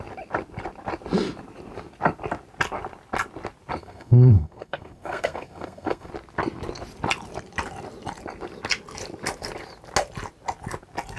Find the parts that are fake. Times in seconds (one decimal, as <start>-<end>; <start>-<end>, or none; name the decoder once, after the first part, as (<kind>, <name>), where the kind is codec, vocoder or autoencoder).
3.8-6.1 (codec, SNAC)